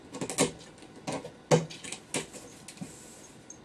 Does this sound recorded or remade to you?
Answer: recorded